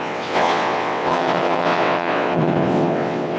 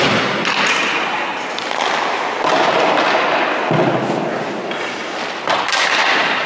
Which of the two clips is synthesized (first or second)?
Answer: first